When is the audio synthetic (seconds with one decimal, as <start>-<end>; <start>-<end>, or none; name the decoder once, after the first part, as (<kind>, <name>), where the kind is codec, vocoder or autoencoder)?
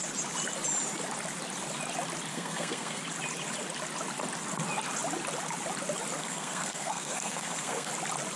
2.3-3.0 (codec, SNAC); 6.2-7.9